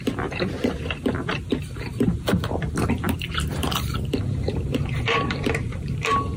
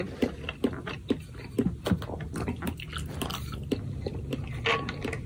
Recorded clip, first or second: second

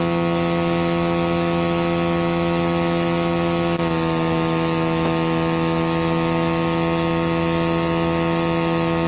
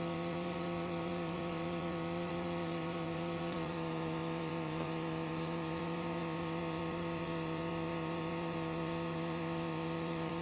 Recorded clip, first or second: first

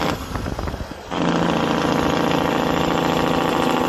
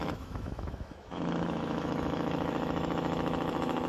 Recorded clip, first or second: first